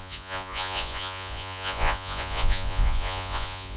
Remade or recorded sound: remade